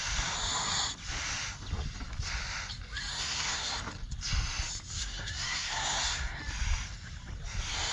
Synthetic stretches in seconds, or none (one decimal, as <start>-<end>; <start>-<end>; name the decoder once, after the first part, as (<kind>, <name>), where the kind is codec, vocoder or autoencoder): 3.1-3.7 (codec, SNAC); 4.9-6.4